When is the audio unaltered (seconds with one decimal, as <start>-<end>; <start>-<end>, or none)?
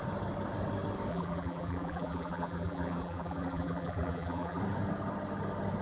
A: 0.0-1.1; 4.6-5.8